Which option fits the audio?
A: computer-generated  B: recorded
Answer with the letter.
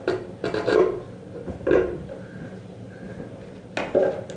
B